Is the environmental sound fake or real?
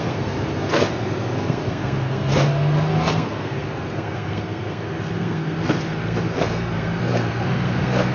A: fake